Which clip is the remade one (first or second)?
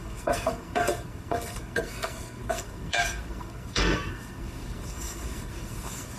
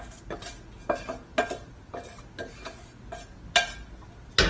first